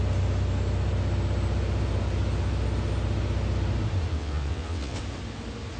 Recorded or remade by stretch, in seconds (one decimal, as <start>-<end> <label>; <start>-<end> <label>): 0.0-4.1 recorded; 4.1-5.0 remade; 5.0-5.8 recorded